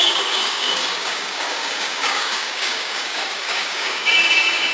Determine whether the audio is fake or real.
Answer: fake